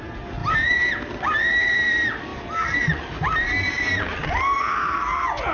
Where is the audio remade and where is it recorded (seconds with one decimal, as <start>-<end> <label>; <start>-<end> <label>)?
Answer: 0.0-0.4 recorded; 0.4-0.9 remade; 0.9-5.5 recorded